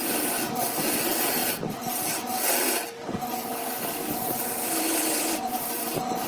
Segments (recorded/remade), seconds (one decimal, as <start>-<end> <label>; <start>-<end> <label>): 0.0-1.4 remade; 1.4-1.9 recorded; 1.9-3.5 remade; 3.5-4.2 recorded; 4.2-6.3 remade